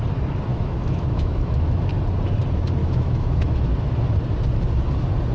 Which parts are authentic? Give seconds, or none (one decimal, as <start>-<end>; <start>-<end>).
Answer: 0.0-0.5; 1.9-2.8; 3.7-5.3